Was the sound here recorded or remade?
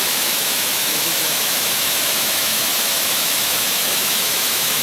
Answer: remade